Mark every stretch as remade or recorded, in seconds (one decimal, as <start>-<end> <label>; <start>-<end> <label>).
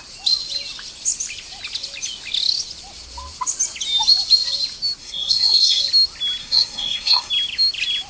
0.0-5.0 recorded; 5.0-5.8 remade; 5.8-6.4 recorded; 6.4-7.3 remade; 7.3-8.1 recorded